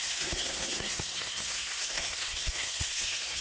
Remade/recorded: remade